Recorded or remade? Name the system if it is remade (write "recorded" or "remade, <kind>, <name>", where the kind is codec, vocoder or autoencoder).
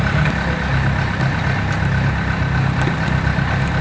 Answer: recorded